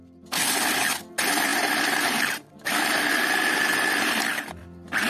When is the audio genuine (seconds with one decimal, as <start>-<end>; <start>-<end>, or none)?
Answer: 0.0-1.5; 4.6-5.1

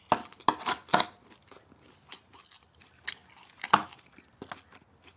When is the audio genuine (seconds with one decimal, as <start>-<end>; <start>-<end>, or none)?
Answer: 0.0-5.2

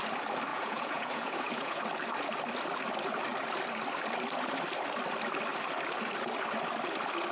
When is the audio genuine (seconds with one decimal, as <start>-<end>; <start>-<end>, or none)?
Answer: 0.0-0.5; 1.8-7.3